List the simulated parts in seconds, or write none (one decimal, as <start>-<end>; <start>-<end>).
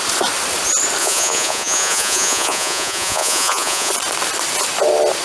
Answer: 1.0-3.9